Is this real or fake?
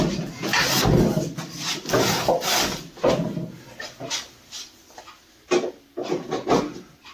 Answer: real